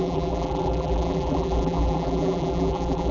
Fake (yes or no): yes